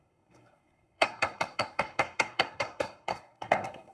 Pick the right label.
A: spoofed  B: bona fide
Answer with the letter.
A